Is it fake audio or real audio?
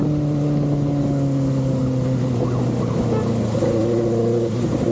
real